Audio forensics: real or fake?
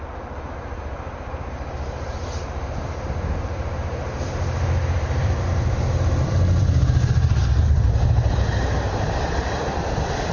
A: fake